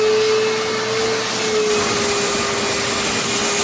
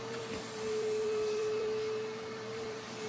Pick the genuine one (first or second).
first